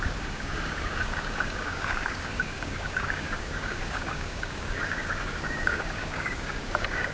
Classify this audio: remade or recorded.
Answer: remade